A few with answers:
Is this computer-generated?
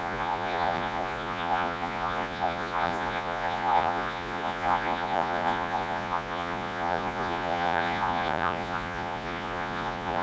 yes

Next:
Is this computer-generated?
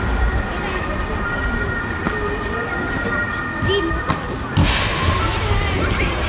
no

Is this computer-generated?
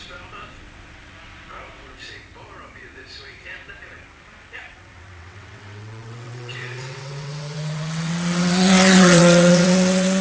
yes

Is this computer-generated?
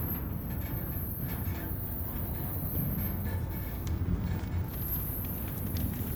no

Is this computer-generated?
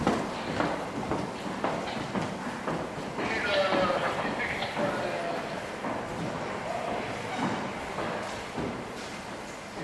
no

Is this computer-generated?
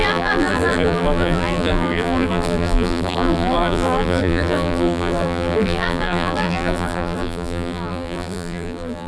yes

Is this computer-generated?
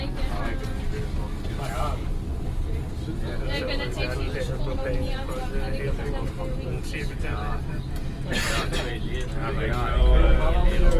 no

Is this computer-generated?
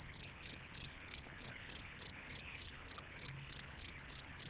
yes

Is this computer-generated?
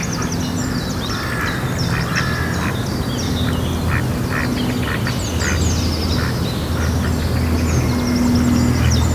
no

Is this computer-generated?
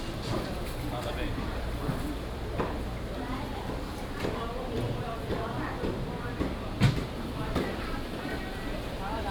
yes